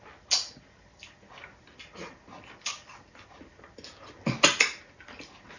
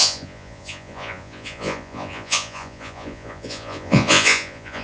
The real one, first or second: first